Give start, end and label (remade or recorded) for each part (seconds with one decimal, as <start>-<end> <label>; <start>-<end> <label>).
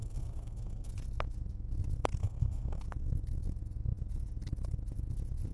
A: 0.0-0.9 remade; 0.9-2.2 recorded; 2.2-2.8 remade; 2.8-5.5 recorded